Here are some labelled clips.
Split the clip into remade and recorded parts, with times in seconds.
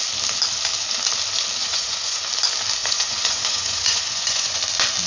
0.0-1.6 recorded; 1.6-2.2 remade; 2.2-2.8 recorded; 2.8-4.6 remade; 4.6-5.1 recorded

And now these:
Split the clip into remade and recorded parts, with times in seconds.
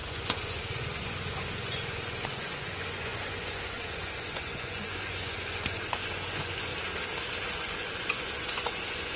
0.0-6.7 remade; 6.7-7.5 recorded; 7.5-9.2 remade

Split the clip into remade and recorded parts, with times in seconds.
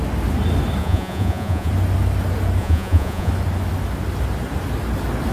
0.0-0.8 recorded; 0.8-1.7 remade; 1.7-2.6 recorded; 2.6-3.3 remade; 3.3-5.3 recorded